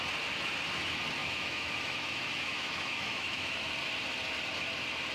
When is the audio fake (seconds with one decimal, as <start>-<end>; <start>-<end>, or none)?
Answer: 1.2-3.7